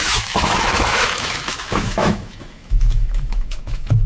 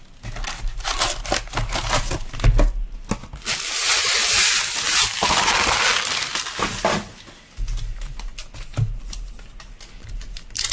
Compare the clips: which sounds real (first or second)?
second